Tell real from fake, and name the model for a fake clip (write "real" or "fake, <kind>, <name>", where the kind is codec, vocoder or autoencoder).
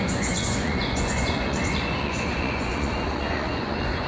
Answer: fake, vocoder, Vocos